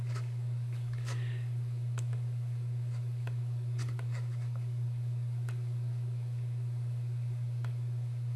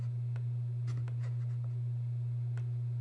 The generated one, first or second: first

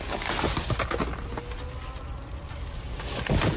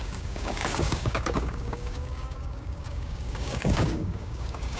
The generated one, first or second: second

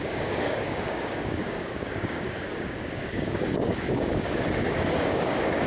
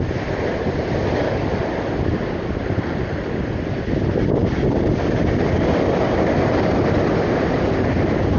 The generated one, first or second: first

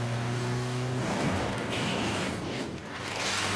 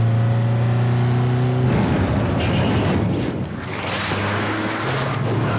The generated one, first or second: first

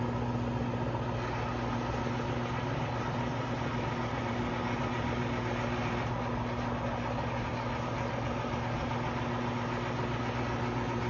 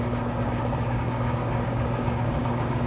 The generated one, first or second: second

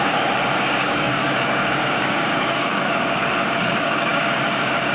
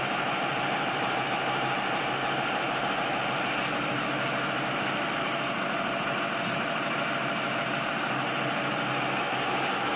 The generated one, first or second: first